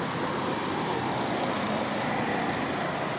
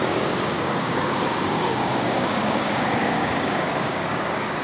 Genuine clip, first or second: first